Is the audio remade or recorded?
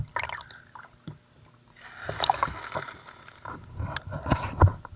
recorded